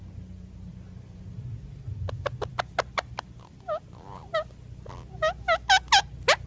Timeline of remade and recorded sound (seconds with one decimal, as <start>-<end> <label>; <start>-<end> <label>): 0.0-6.5 recorded